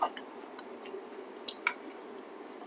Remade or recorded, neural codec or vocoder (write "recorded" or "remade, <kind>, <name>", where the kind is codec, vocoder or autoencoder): recorded